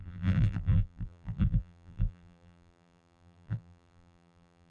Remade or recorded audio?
remade